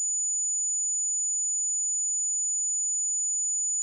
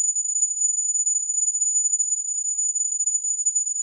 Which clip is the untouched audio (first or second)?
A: first